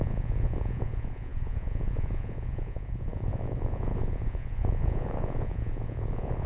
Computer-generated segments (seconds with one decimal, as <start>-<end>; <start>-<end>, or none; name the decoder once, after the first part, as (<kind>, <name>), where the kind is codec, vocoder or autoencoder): 0.0-6.5 (vocoder, Vocos)